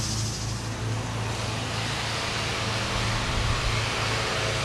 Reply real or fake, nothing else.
real